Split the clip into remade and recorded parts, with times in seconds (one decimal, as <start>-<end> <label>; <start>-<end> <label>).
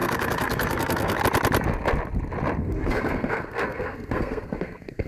0.0-1.2 remade; 1.2-2.6 recorded; 2.6-5.1 remade